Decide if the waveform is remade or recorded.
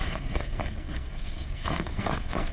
remade